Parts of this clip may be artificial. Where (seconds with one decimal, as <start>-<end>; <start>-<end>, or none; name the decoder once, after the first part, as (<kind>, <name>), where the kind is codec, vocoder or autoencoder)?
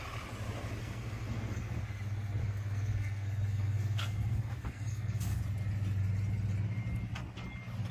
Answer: 0.8-1.8 (codec, SNAC); 2.4-5.4